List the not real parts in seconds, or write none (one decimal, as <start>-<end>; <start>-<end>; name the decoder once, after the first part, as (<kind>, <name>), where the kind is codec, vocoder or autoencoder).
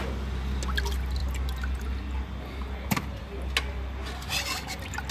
none